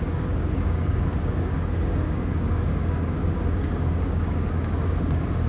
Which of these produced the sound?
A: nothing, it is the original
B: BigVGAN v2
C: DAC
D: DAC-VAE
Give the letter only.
C